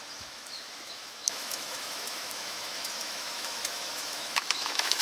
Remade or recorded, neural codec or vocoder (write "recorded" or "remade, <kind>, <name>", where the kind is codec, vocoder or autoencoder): remade, autoencoder, DAC-VAE